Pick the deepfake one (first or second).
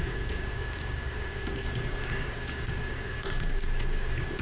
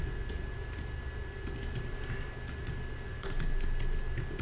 first